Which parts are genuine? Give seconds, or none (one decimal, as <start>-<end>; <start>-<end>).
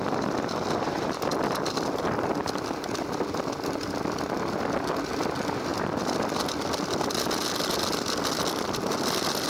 0.0-9.5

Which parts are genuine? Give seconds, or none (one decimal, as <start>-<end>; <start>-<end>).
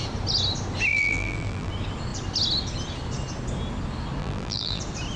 0.0-0.9; 1.7-4.2; 4.8-5.2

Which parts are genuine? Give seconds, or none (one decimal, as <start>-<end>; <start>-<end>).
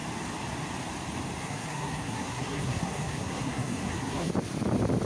0.0-1.4; 4.3-5.1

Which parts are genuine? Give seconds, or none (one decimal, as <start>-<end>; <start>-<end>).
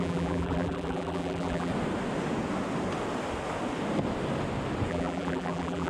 1.7-4.9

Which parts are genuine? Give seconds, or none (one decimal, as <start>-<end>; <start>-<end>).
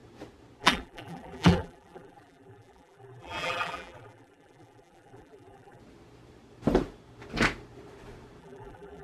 0.0-0.6; 5.8-8.4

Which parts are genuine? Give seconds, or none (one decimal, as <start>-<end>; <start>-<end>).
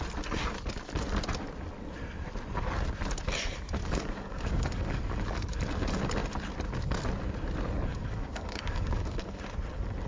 0.0-3.8; 5.6-7.9; 9.4-10.1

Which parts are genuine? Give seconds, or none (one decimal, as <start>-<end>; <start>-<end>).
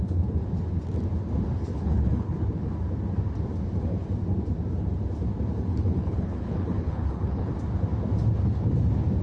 0.0-1.6; 2.7-5.7; 7.5-9.2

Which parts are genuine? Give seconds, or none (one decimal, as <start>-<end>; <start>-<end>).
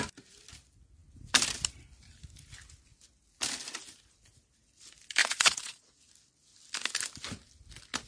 0.0-5.2; 6.0-8.1